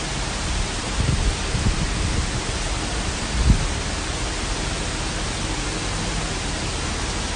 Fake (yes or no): no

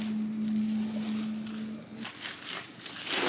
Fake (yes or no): no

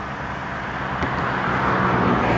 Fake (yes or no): no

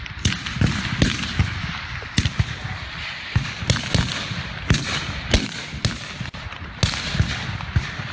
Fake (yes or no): no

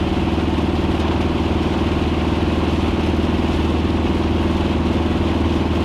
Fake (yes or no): no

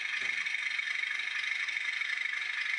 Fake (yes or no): no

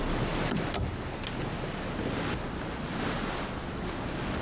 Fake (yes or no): no